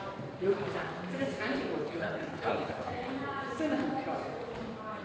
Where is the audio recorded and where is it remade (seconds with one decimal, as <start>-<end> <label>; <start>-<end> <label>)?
0.0-1.8 recorded; 1.8-3.1 remade; 3.1-5.0 recorded